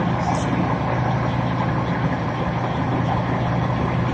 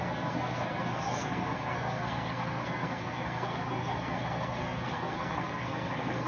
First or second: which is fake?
second